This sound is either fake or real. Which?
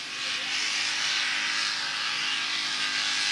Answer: real